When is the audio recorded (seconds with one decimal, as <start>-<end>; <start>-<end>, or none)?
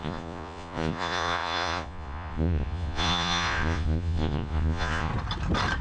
5.1-5.8